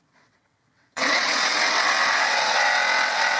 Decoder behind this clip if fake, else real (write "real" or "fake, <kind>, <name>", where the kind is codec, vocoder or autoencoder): fake, vocoder, WaveNeXt